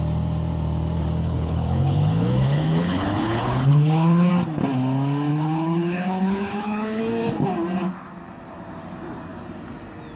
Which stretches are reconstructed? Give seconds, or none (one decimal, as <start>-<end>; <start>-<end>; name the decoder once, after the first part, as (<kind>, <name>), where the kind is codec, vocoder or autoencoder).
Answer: 1.2-4.3 (codec, HILCodec); 5.3-7.0